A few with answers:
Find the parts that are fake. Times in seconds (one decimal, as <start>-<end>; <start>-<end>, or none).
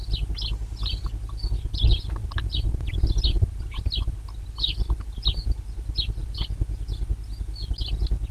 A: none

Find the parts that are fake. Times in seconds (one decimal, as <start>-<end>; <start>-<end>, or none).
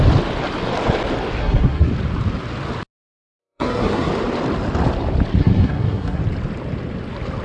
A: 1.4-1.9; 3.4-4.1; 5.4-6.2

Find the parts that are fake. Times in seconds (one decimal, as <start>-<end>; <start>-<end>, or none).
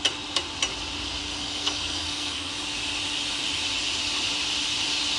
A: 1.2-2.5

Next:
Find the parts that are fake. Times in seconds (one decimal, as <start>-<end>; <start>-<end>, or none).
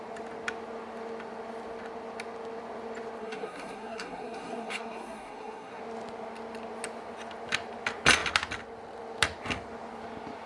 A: 3.2-5.8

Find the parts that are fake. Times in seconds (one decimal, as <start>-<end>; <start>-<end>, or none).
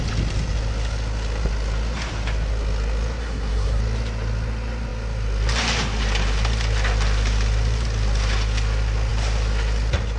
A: 3.2-3.8